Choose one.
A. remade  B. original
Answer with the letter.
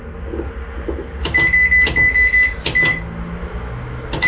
B